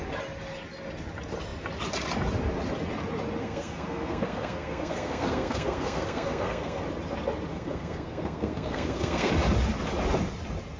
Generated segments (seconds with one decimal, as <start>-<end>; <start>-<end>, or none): 3.4-6.8; 7.5-9.3

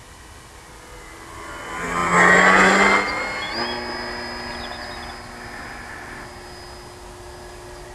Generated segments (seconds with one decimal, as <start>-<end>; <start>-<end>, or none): none

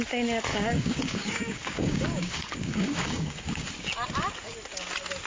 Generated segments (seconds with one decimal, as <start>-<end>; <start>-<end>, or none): 0.5-3.7

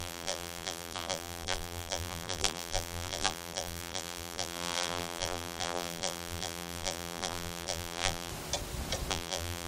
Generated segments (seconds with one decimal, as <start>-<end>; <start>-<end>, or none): 0.0-8.3; 9.1-9.7